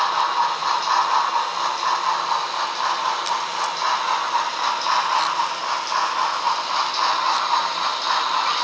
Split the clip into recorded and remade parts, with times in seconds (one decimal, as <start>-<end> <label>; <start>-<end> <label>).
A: 0.0-8.6 recorded